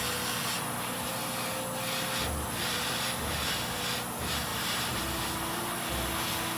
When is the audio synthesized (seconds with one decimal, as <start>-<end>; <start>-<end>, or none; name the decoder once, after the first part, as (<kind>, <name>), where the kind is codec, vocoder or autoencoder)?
4.5-5.0 (vocoder, BigVGAN v2)